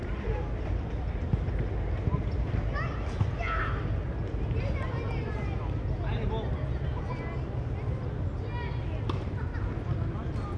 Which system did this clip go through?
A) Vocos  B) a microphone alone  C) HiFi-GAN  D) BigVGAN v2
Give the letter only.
B